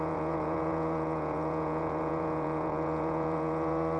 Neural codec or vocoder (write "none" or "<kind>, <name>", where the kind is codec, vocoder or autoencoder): vocoder, Vocos